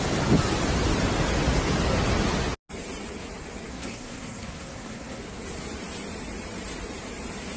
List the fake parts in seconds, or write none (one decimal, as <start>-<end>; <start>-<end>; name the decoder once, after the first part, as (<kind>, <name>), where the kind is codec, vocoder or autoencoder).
3.7-5.2 (codec, SNAC)

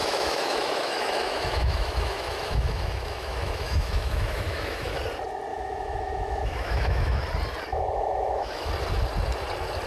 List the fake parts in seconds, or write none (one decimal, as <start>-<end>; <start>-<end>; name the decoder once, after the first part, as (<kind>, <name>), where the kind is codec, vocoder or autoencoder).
0.0-5.0 (autoencoder, DAC-VAE); 5.5-7.2; 7.7-8.7

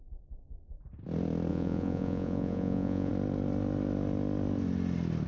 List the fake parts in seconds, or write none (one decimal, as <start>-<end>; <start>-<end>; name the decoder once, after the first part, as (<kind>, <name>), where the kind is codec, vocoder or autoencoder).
1.5-3.1 (vocoder, Vocos)